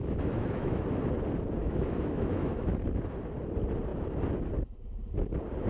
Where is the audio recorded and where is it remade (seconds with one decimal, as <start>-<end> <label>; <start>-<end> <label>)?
0.0-0.8 remade; 0.8-1.6 recorded; 1.6-2.8 remade; 2.8-5.7 recorded